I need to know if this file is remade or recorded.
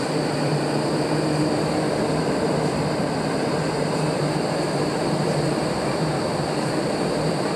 remade